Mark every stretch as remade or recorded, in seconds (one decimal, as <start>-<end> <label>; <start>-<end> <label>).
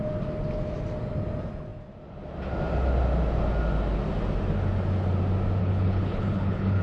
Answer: 0.0-5.6 recorded; 5.6-6.8 remade